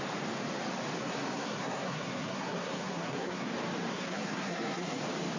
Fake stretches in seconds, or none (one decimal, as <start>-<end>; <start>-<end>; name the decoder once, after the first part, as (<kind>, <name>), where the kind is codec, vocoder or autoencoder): 1.0-3.5 (codec, SNAC); 3.9-5.0